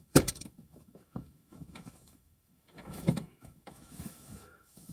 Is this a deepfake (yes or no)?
yes